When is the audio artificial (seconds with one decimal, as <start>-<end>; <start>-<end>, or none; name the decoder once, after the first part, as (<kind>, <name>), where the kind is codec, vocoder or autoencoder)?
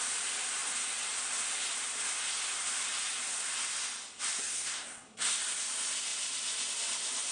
4.5-5.4 (codec, SNAC)